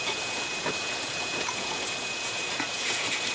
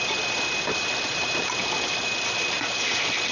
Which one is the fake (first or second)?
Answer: first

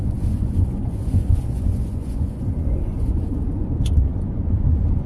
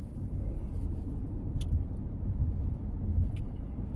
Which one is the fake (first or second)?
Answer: first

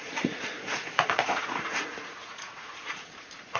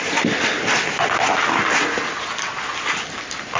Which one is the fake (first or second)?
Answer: first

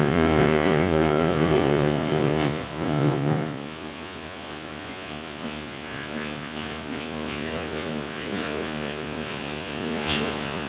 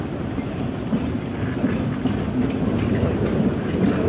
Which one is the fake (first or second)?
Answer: first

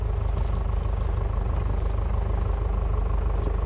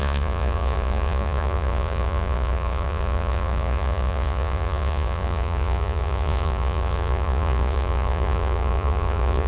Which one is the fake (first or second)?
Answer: second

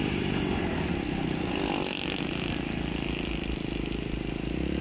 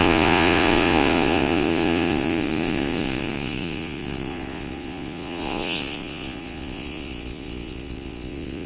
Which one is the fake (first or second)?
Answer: second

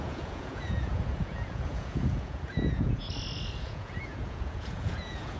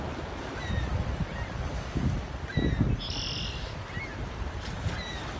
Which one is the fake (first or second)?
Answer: first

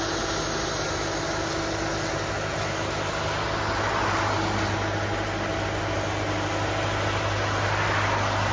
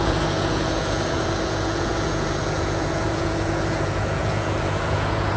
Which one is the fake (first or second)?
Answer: second